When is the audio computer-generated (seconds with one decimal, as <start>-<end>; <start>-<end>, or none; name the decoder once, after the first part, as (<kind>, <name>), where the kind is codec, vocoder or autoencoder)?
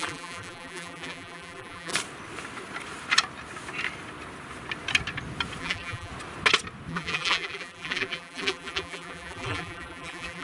0.0-1.9 (vocoder, BigVGAN v2); 5.6-6.1; 6.9-10.4